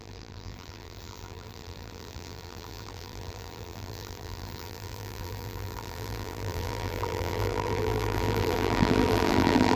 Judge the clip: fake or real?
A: fake